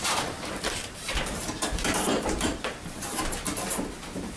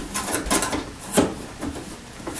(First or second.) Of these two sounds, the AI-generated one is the first